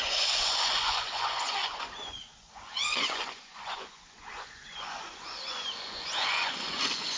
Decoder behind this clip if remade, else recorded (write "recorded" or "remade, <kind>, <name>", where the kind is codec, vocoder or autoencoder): remade, vocoder, Vocos